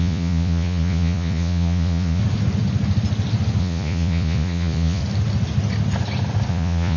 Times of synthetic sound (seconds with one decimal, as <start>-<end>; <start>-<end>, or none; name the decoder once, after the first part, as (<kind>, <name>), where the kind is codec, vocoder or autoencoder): 0.0-2.2 (vocoder, Vocos); 3.6-5.0; 6.5-7.0

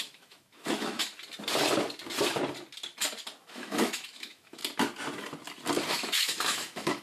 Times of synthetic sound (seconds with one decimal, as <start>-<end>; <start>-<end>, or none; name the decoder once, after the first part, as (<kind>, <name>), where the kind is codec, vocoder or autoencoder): 0.0-1.0 (autoencoder, DAC-VAE); 3.4-4.6; 5.9-7.0

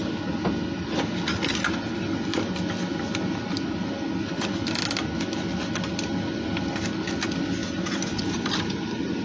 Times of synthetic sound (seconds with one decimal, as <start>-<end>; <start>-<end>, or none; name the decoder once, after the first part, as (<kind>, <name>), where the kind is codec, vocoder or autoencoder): 7.6-9.2 (vocoder, BigVGAN v2)